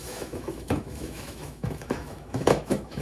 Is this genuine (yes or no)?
no